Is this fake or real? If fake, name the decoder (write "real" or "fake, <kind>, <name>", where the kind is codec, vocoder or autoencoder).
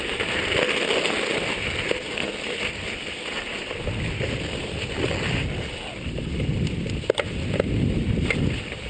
real